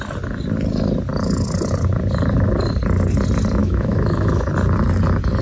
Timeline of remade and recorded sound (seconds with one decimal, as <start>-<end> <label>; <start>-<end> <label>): 0.0-3.6 recorded; 3.6-4.5 remade; 4.5-5.4 recorded